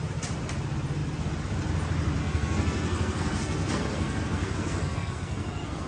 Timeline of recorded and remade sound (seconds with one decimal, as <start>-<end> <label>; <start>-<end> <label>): 0.0-2.2 recorded; 2.2-5.9 remade